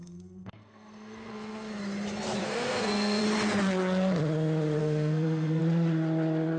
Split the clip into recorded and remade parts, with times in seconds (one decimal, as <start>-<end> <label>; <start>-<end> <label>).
0.0-1.7 remade; 1.7-2.4 recorded; 2.4-3.2 remade; 3.2-4.8 recorded; 4.8-5.6 remade; 5.6-6.6 recorded